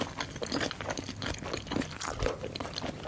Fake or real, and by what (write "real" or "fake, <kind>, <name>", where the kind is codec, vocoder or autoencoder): real